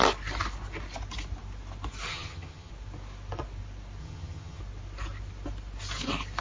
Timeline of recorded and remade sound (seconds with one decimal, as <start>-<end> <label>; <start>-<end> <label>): 0.0-2.1 recorded; 2.1-2.7 remade; 2.7-4.0 recorded; 4.0-4.6 remade; 4.6-6.4 recorded